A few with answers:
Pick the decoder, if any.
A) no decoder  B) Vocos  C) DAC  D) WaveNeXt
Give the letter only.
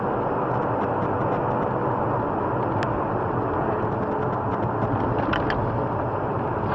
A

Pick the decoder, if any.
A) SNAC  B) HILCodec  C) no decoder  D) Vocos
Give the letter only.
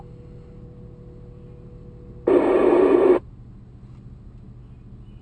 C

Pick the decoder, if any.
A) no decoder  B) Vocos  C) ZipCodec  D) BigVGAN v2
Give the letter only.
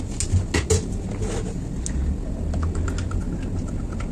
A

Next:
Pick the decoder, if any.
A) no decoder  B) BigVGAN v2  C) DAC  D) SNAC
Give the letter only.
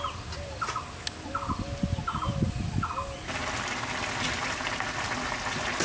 A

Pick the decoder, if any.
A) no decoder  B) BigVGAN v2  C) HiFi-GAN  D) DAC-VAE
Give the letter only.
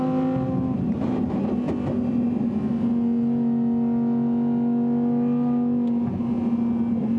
A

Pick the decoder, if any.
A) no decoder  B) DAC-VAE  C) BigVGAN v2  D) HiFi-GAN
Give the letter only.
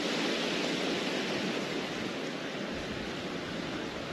A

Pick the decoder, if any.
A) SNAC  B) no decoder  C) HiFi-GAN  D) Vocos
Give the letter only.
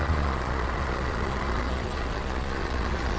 D